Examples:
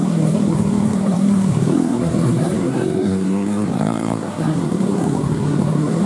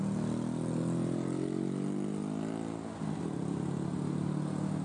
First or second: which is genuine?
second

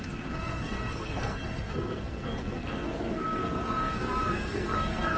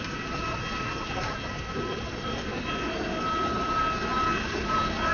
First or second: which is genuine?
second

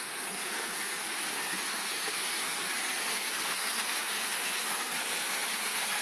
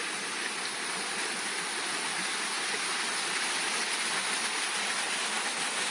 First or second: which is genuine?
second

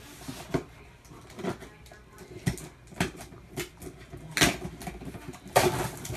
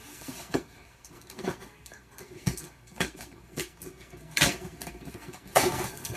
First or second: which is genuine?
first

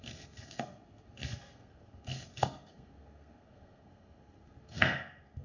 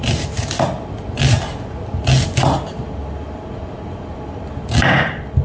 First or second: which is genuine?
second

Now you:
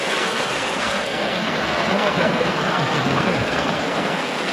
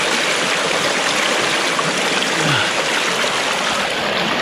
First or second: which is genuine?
second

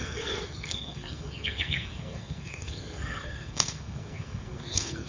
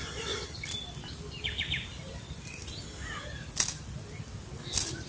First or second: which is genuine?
second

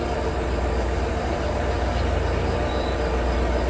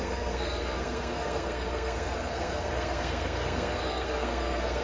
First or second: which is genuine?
first